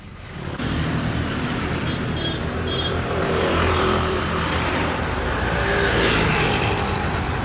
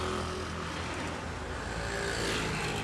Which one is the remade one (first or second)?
first